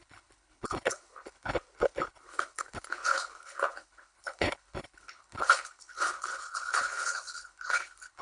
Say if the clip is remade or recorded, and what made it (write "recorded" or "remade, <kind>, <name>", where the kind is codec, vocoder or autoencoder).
remade, codec, HILCodec